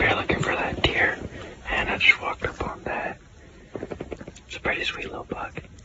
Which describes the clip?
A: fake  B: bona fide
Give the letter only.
B